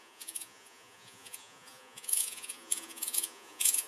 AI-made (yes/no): yes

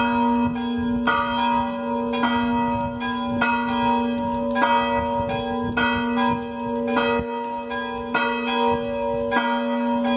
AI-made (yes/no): no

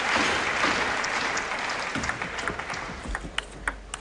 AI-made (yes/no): no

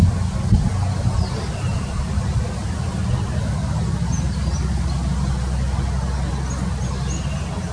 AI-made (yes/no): no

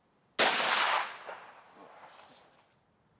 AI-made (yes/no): no